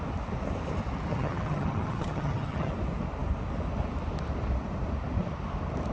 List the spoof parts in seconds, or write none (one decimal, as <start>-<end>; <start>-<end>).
1.1-2.7